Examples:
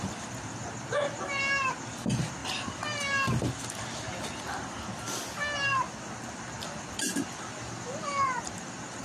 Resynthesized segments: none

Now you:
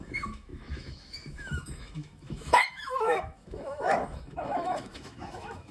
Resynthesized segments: 0.0-5.7 (autoencoder, DAC-VAE)

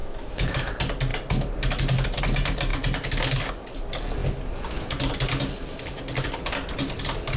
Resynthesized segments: 0.0-0.7 (autoencoder, DAC-VAE)

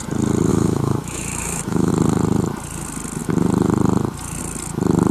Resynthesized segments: 0.5-1.9 (autoencoder, DAC-VAE)

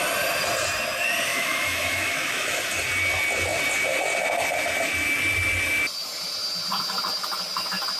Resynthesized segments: 1.3-2.6 (autoencoder, DAC-VAE)

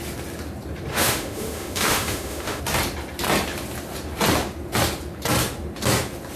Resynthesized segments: 0.9-2.6 (autoencoder, DAC-VAE)

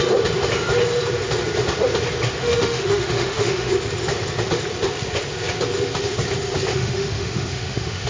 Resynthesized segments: 2.4-3.7 (autoencoder, DAC-VAE); 6.7-8.1